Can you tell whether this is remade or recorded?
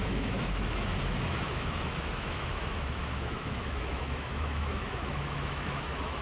remade